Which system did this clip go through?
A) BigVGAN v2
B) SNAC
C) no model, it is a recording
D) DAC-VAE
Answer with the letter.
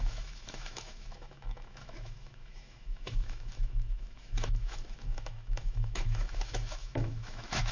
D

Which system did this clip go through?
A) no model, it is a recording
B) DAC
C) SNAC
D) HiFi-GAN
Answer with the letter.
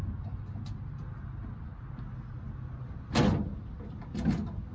A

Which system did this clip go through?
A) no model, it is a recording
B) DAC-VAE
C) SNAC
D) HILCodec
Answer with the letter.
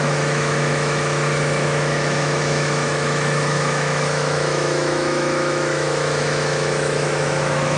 B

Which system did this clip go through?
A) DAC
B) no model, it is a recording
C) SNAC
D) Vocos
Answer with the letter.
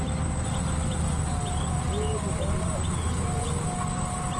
B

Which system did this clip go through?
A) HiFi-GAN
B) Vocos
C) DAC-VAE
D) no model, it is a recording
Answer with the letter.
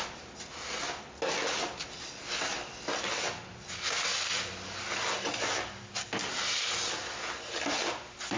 D